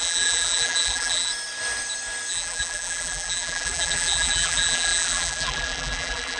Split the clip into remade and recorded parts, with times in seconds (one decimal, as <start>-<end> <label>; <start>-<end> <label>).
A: 0.0-1.3 remade; 1.3-2.3 recorded; 2.3-6.4 remade